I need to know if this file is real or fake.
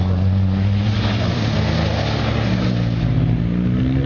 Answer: real